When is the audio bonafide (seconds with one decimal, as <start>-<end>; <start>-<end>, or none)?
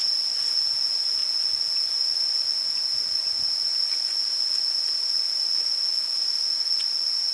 0.0-7.3